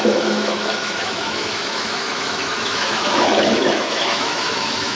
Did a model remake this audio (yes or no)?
yes